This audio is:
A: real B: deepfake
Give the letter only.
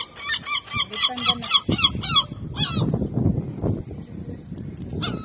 A